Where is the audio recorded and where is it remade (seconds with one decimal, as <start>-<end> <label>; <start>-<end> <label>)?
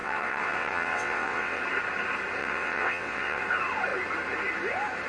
0.0-1.6 remade; 1.6-2.4 recorded; 2.4-3.4 remade; 3.4-5.1 recorded